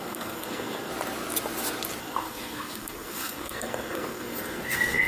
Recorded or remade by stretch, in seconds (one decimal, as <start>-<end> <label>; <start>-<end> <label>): 0.0-0.9 remade; 0.9-2.0 recorded; 2.0-5.1 remade